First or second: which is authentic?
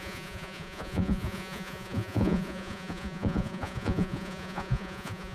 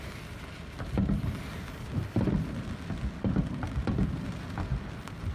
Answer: second